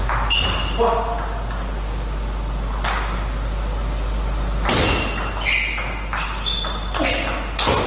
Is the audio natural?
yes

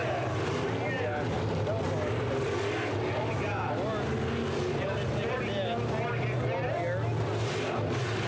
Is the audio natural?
yes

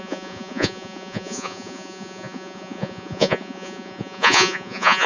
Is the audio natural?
no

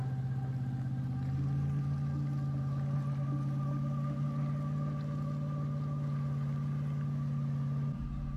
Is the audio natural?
yes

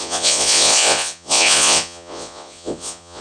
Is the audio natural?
no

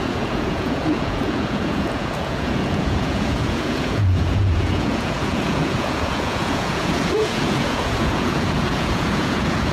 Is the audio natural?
no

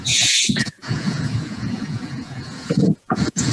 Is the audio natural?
no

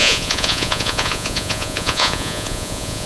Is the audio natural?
no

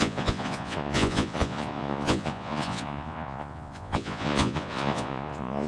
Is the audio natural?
no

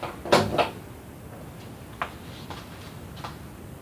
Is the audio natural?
yes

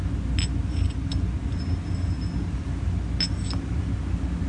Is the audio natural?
yes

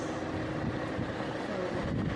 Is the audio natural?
yes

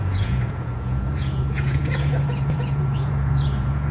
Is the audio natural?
no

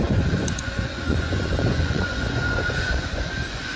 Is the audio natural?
no